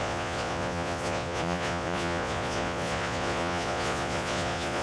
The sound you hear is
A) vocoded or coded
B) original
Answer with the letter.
A